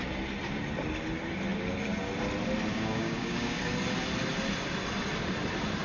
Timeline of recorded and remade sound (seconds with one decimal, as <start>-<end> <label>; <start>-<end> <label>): 0.0-2.7 recorded; 2.7-3.6 remade; 3.6-5.8 recorded